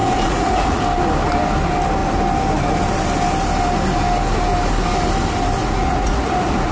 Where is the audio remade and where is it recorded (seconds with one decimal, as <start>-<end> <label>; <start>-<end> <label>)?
0.0-0.8 remade; 0.8-5.6 recorded; 5.6-6.7 remade